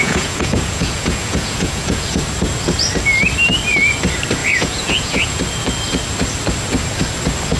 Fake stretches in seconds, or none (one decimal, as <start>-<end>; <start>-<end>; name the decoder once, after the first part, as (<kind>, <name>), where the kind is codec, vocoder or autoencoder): 0.0-2.0 (vocoder, Vocos); 4.4-5.4